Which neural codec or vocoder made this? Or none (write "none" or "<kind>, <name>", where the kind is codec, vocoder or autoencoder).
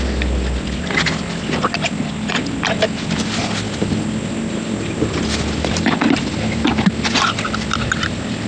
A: none